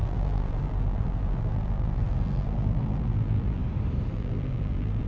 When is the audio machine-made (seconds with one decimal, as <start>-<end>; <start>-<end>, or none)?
0.0-3.6; 4.1-5.1